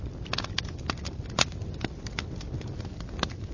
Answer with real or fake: fake